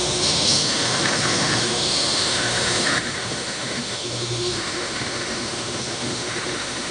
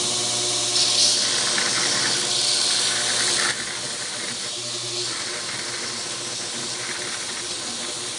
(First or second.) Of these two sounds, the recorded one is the second